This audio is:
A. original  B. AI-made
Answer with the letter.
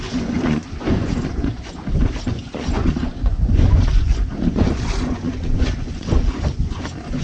B